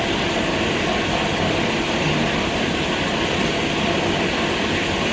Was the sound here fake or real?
real